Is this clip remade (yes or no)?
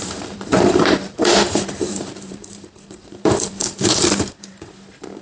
yes